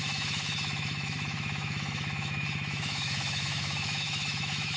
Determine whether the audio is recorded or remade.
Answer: remade